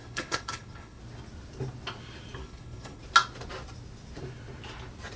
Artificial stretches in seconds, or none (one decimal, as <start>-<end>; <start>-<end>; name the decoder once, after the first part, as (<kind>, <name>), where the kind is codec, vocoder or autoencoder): 0.0-1.0 (codec, HILCodec); 2.4-3.0

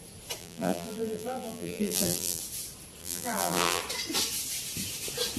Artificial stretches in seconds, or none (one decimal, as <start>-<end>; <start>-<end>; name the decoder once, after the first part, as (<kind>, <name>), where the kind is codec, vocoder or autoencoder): 0.4-2.4 (vocoder, BigVGAN v2); 3.0-3.8

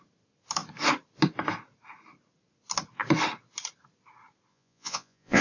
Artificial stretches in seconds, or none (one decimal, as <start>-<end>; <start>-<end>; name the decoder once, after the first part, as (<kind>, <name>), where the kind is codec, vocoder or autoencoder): 4.5-5.4 (vocoder, Vocos)